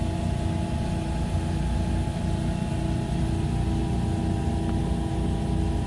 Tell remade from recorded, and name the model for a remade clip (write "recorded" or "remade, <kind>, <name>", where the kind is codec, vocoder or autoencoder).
recorded